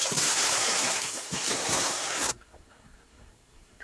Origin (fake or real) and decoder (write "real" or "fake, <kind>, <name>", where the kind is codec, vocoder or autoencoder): fake, codec, SNAC